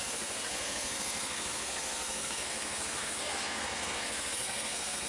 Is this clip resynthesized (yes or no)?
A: yes